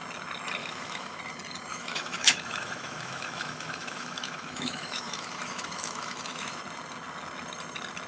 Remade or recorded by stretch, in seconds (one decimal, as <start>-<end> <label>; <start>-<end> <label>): 0.0-0.6 recorded; 0.6-1.2 remade; 1.2-1.7 recorded; 1.7-6.6 remade; 6.6-8.1 recorded

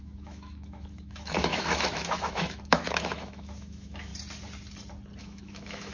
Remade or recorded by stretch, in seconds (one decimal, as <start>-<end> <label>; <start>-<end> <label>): 0.0-4.1 remade; 4.1-5.2 recorded; 5.2-5.9 remade

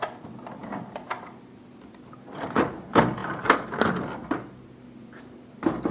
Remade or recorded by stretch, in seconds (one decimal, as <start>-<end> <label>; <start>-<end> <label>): 0.0-5.9 recorded

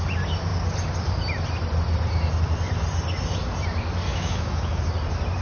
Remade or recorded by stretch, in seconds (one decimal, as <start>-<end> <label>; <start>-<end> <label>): 0.0-4.1 recorded; 4.1-4.8 remade; 4.8-5.4 recorded

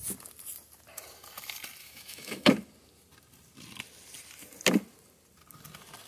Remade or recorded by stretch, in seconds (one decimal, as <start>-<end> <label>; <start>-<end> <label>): 0.0-1.8 recorded; 1.8-2.5 remade; 2.5-6.1 recorded